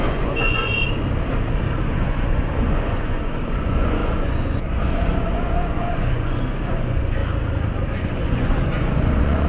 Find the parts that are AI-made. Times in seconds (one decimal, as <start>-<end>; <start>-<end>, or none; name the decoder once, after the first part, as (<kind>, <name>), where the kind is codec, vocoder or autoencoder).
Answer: 0.0-0.7 (vocoder, Vocos); 1.8-7.2; 7.9-9.5